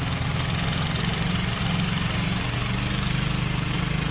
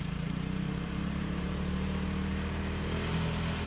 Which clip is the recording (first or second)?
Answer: first